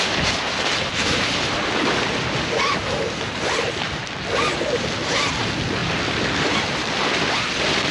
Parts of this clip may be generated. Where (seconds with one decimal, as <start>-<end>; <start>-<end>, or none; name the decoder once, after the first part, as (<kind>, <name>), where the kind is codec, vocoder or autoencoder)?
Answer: none